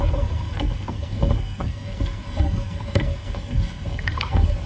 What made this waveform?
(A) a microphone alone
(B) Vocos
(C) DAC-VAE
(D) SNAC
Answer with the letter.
D